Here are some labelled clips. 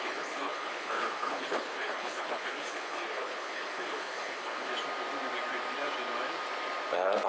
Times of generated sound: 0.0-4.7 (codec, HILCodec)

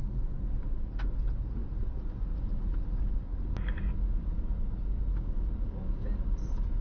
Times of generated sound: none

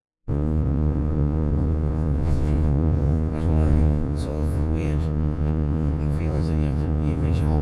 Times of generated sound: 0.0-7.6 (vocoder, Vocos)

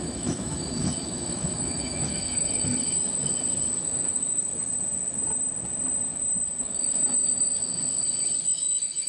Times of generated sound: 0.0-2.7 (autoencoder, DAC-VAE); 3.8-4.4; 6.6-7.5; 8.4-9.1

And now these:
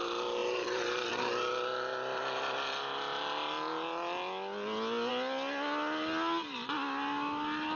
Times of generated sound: none